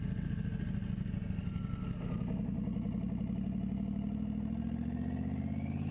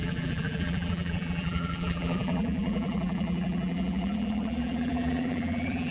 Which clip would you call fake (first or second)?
second